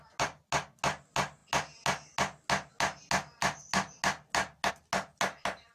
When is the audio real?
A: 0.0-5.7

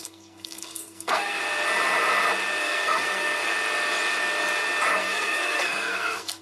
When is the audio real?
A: 1.4-2.6; 3.5-4.9

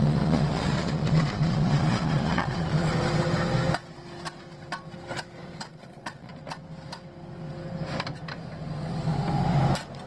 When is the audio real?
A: 2.9-5.6; 6.3-10.1

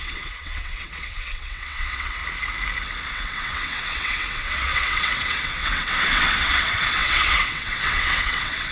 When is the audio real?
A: 2.2-3.1